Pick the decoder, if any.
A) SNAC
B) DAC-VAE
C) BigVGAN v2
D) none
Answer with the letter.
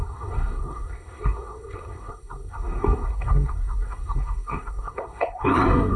A